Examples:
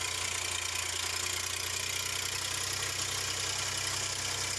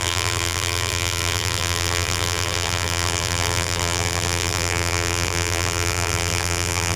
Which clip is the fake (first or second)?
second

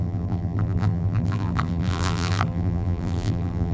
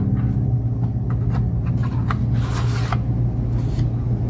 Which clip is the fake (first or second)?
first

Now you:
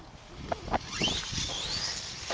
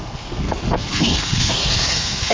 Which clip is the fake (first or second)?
second